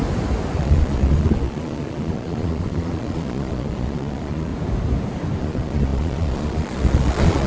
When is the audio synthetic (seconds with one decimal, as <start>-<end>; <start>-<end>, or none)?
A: 0.6-4.5; 5.4-7.5